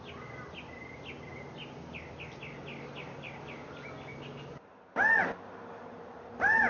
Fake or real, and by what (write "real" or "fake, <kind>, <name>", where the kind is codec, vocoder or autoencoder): real